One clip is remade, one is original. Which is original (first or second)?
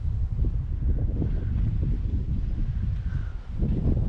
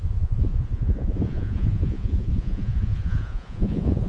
first